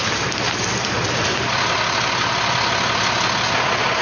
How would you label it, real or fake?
real